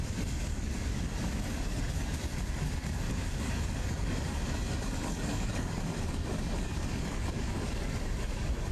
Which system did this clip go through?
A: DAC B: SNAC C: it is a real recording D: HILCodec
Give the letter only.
A